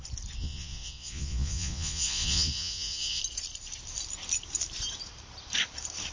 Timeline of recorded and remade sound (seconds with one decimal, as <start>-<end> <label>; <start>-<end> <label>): 0.0-0.4 recorded; 0.4-3.2 remade; 3.2-6.1 recorded